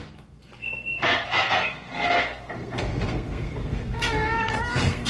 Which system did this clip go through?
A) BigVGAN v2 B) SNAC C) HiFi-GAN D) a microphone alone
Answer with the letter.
B